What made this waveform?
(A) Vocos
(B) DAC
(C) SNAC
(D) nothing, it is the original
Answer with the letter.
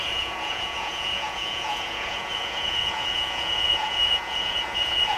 A